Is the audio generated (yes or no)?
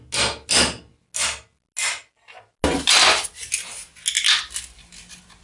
no